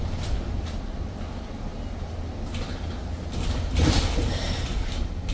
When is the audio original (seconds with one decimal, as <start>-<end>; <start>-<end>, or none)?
0.0-5.3